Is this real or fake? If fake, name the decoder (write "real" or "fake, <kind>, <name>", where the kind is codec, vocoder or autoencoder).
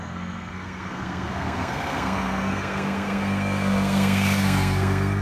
fake, codec, SNAC